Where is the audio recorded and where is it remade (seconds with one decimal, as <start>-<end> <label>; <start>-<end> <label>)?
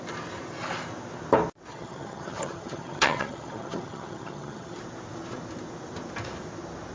0.0-1.7 recorded; 1.7-4.8 remade; 4.8-6.9 recorded